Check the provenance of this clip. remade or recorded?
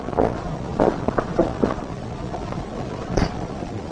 remade